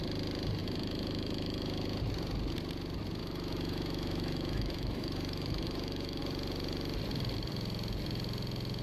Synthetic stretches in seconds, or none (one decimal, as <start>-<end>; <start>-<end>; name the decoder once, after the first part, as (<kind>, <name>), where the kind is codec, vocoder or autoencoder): 0.6-2.0 (autoencoder, DAC-VAE); 3.2-6.2